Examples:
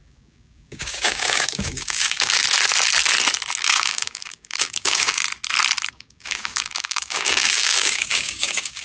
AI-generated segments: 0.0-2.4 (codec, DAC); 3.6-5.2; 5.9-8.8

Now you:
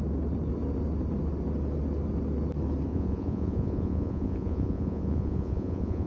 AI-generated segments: 2.9-6.1 (vocoder, Vocos)

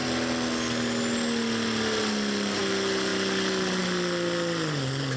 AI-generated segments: none

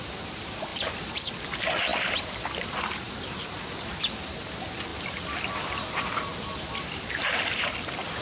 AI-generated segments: 0.7-1.3 (vocoder, BigVGAN v2); 1.9-3.6

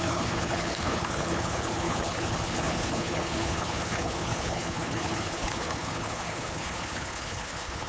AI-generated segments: 0.0-7.9 (codec, HILCodec)

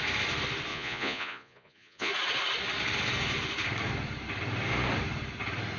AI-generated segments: 0.7-2.1 (vocoder, Vocos)

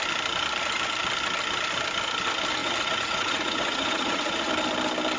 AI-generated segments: 2.6-4.5 (vocoder, Vocos)